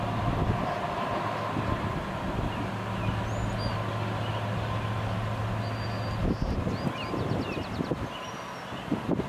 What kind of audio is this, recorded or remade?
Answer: recorded